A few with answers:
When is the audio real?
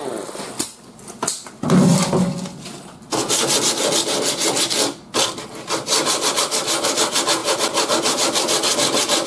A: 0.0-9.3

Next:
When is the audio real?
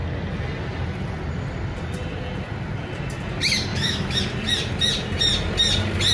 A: 0.0-3.7; 4.2-6.1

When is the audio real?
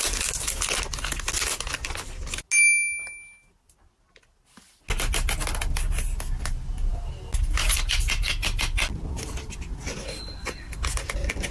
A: 0.0-11.5